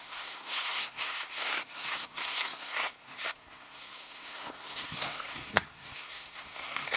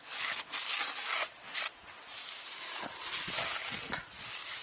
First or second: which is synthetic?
first